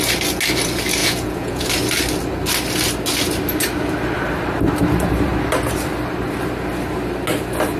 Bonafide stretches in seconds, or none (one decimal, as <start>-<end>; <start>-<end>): 0.0-1.0; 1.7-7.8